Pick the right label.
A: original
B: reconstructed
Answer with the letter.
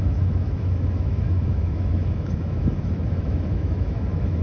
B